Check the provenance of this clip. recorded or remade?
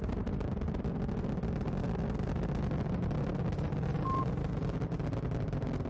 recorded